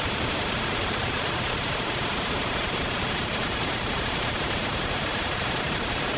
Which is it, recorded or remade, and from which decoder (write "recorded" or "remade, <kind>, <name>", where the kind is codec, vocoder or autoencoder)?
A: remade, vocoder, BigVGAN v2